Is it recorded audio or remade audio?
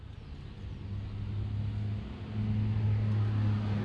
recorded